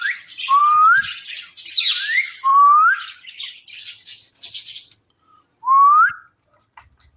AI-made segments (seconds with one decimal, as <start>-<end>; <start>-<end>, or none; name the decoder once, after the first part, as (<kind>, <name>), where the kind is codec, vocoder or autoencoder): none